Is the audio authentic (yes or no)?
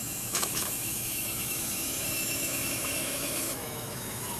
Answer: no